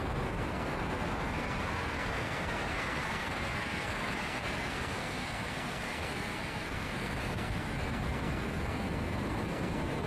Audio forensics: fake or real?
fake